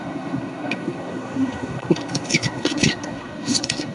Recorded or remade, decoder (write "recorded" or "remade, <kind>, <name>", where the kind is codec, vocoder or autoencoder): remade, codec, SNAC